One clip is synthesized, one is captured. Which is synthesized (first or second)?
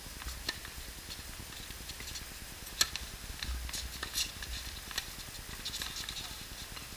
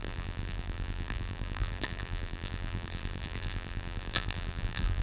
second